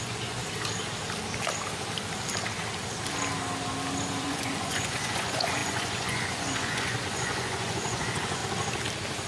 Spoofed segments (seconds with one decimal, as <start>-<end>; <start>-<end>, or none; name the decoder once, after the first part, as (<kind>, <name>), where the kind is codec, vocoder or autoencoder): 0.0-0.4 (vocoder, Vocos); 4.2-8.4